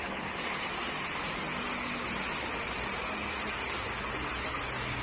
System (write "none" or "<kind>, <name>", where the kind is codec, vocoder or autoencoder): none